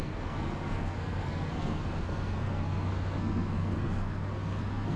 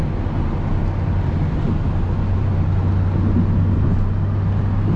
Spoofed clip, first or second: first